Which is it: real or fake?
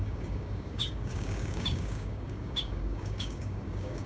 fake